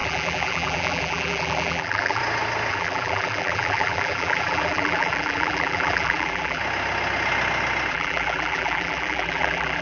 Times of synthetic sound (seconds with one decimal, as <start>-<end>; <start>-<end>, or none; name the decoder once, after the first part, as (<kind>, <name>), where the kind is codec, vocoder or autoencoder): 0.0-2.2 (vocoder, BigVGAN v2); 2.7-6.6; 7.9-9.8